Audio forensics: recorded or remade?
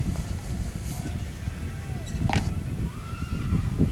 recorded